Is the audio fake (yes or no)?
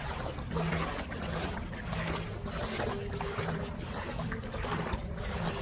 no